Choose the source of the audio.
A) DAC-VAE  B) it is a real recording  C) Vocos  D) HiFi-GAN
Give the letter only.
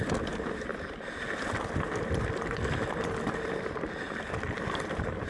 B